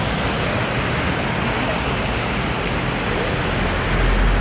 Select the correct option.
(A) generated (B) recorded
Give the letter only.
B